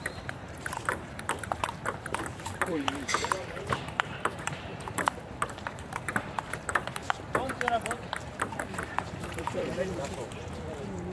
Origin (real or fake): fake